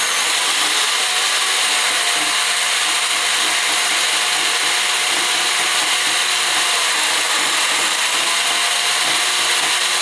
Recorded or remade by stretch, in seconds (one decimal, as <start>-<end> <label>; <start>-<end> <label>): 0.0-5.6 recorded; 5.6-7.6 remade; 7.6-10.0 recorded